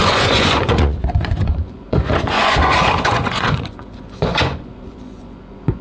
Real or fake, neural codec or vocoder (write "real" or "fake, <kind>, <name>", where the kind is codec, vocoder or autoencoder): fake, vocoder, Vocos